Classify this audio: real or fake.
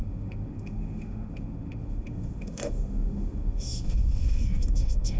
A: fake